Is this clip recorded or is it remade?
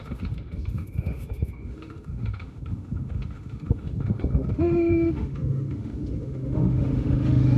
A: remade